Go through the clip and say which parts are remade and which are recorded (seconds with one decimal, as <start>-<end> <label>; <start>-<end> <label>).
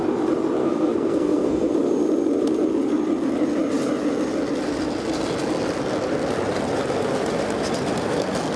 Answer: 0.0-0.6 recorded; 0.6-1.7 remade; 1.7-8.6 recorded